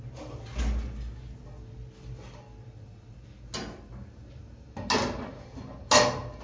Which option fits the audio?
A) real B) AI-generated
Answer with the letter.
A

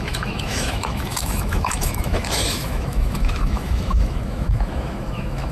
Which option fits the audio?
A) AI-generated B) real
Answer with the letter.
A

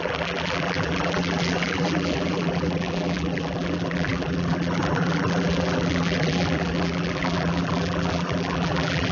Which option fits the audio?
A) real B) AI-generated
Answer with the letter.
B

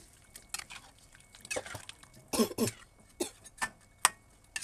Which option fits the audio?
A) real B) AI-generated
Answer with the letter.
A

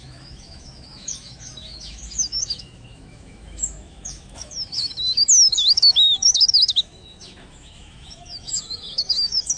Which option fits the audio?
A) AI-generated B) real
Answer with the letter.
A